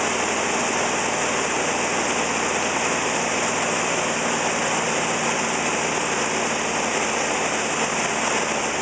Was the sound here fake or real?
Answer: real